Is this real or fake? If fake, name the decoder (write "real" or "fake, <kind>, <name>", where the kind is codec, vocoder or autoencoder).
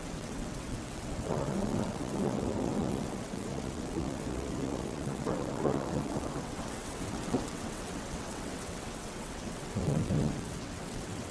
fake, vocoder, WaveNeXt